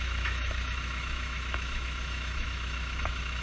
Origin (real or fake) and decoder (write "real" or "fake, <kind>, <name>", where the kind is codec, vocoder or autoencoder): fake, autoencoder, DAC-VAE